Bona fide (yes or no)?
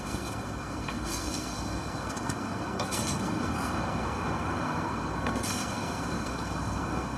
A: no